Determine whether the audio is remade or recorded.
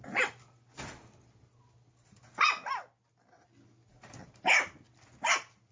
recorded